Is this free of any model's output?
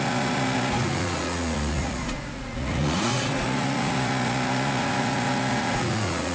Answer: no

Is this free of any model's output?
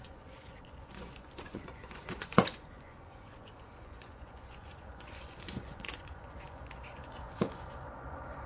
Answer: no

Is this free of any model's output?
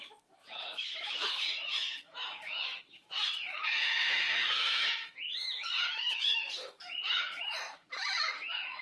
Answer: no